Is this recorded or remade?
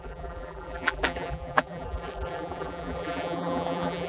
remade